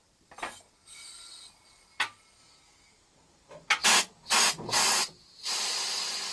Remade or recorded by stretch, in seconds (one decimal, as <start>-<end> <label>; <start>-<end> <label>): 0.0-5.0 recorded; 5.0-5.6 remade; 5.6-6.3 recorded